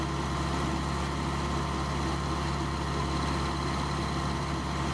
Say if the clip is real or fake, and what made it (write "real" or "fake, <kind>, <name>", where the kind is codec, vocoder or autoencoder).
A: real